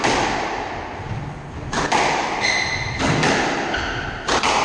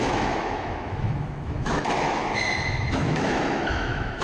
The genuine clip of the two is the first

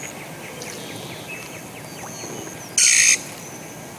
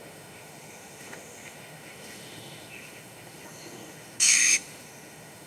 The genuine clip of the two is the first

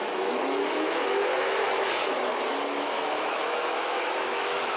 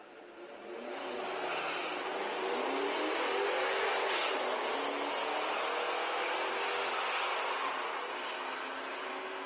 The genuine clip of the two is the second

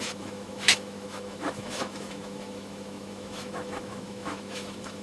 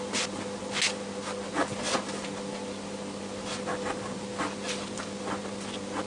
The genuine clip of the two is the second